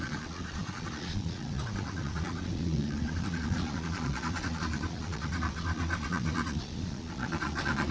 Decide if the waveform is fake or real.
fake